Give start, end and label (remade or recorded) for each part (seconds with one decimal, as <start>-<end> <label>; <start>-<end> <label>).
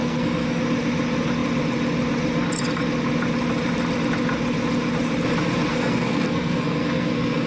0.0-0.6 remade; 0.6-5.7 recorded; 5.7-7.5 remade